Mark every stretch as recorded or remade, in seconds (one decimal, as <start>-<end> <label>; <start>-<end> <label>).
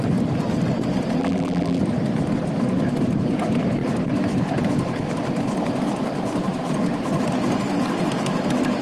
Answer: 0.0-1.2 recorded; 1.2-1.8 remade; 1.8-8.8 recorded